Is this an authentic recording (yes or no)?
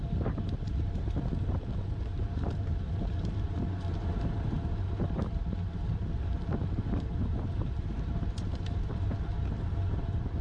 no